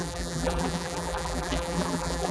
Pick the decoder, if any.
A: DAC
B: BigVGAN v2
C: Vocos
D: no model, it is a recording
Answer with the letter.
B